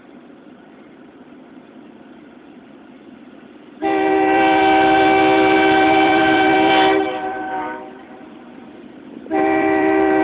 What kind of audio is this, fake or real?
fake